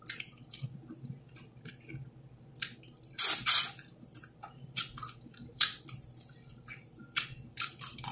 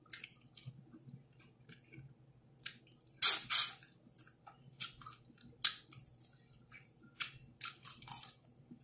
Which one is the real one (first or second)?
second